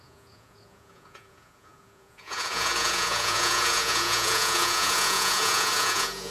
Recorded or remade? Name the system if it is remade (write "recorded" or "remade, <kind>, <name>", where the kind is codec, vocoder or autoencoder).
remade, vocoder, Vocos